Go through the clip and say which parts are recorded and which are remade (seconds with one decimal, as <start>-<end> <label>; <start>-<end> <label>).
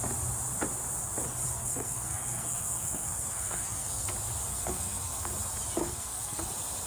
0.0-1.5 recorded; 1.5-4.1 remade; 4.1-4.5 recorded; 4.5-5.3 remade; 5.3-5.8 recorded; 5.8-6.5 remade; 6.5-6.9 recorded